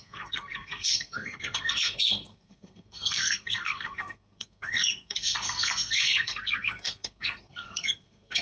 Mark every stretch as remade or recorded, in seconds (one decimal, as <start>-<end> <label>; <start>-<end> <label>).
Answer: 0.0-8.4 remade